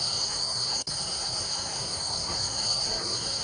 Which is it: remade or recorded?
remade